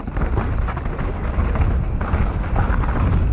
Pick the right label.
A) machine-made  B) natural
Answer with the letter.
B